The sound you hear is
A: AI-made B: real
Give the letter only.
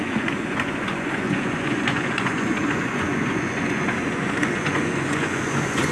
A